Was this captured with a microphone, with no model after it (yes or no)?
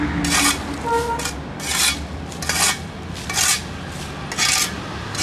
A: yes